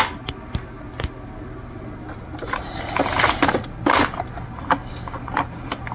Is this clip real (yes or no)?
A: yes